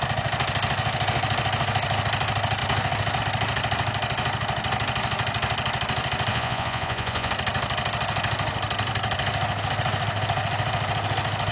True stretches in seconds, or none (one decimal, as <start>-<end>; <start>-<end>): 0.0-6.3; 7.3-11.5

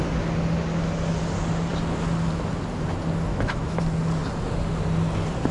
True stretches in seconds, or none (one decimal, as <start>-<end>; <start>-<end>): 0.0-3.3; 3.8-5.5

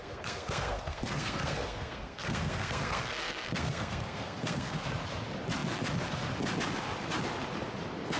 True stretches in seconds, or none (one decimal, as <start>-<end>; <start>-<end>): 4.7-8.2

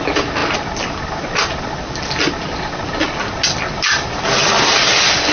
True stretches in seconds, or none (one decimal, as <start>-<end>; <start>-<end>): 0.0-5.3

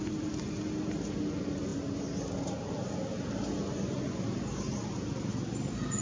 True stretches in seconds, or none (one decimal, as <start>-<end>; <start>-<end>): 0.0-6.0

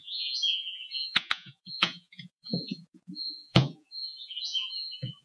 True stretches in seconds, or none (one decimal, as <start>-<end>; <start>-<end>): none

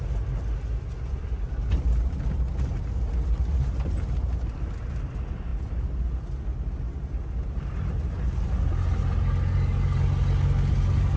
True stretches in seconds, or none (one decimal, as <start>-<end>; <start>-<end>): 0.0-11.2